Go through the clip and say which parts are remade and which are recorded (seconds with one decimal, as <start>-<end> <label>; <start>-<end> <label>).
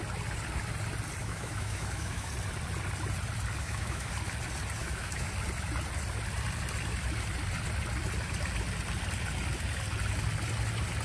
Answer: 0.0-1.2 recorded; 1.2-2.3 remade; 2.3-3.6 recorded; 3.6-4.1 remade; 4.1-4.8 recorded; 4.8-5.3 remade; 5.3-11.0 recorded